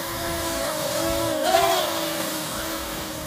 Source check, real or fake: fake